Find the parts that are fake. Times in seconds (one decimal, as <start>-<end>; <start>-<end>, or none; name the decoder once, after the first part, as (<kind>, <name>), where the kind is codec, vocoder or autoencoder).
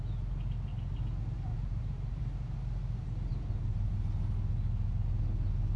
1.5-2.2 (vocoder, BigVGAN v2)